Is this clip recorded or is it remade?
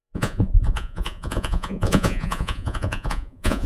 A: remade